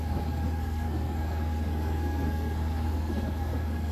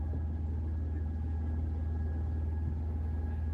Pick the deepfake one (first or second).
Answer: first